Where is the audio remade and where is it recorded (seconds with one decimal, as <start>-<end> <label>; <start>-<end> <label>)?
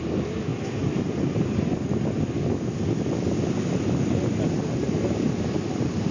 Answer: 0.0-6.1 recorded